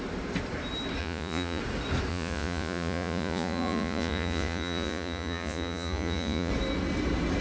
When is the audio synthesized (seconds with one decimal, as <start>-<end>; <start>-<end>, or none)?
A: 1.0-1.6; 2.1-6.5